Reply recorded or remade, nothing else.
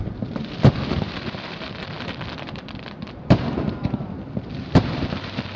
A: remade